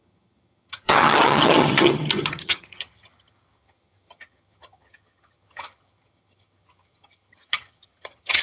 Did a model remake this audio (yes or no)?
yes